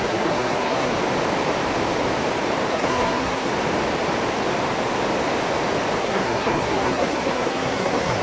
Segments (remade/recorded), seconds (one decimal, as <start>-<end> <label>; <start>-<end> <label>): 0.0-0.9 remade; 0.9-2.7 recorded; 2.7-3.5 remade; 3.5-6.0 recorded; 6.0-8.2 remade